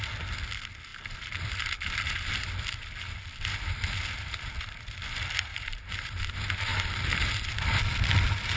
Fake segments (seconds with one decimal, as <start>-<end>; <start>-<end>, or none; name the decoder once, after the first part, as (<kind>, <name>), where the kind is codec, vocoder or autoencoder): 5.5-6.2 (vocoder, BigVGAN v2); 6.7-7.6